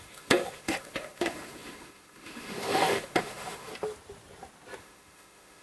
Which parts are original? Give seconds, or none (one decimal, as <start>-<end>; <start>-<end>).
3.7-4.8